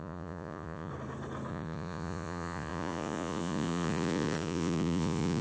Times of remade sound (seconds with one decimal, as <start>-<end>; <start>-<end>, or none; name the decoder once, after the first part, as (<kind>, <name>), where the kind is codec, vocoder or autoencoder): 0.0-0.9 (vocoder, Vocos); 1.5-5.4